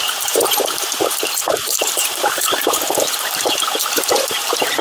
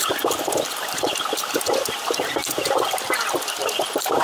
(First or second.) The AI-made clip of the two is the first